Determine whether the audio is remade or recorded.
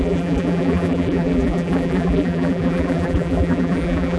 remade